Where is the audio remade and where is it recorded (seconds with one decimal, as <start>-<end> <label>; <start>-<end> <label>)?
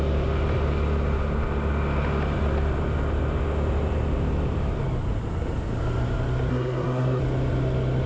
0.0-6.5 recorded; 6.5-7.2 remade; 7.2-8.1 recorded